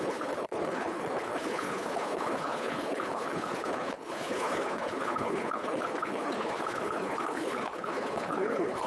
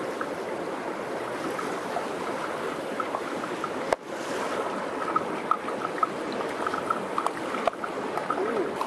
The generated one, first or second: first